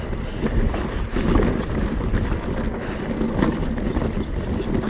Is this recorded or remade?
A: recorded